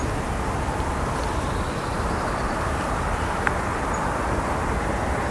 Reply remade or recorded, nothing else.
recorded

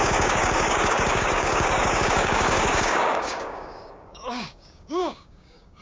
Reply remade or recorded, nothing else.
remade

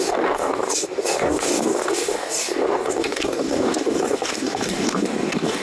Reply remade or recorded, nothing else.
remade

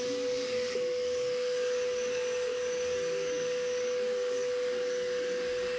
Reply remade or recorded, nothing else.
remade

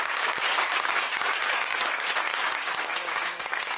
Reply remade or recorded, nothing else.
remade